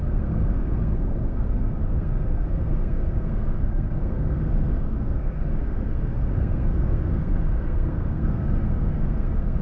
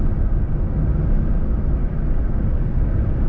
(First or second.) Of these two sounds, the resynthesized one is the first